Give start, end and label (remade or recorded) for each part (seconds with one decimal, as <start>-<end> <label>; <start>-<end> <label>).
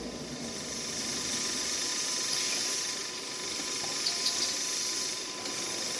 0.0-6.0 recorded